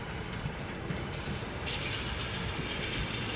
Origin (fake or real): real